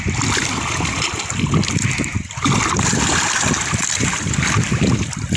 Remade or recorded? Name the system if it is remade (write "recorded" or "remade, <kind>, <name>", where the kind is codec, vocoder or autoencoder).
recorded